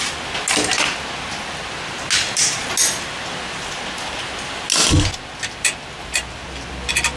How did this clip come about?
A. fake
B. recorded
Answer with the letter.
B